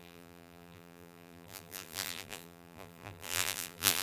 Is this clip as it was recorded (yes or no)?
no